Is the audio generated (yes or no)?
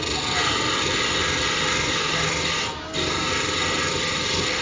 no